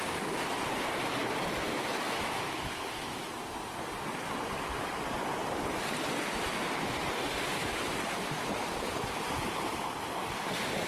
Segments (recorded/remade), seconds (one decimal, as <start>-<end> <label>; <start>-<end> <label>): 0.0-1.2 recorded; 1.2-3.3 remade; 3.3-10.9 recorded